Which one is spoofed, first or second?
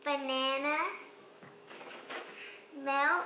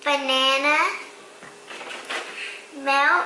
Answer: first